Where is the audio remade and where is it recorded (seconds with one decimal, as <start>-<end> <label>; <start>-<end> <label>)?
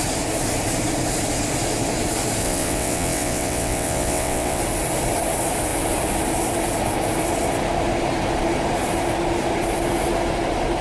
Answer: 0.0-2.4 recorded; 2.4-4.6 remade; 4.6-10.8 recorded